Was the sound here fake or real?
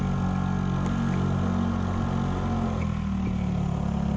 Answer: real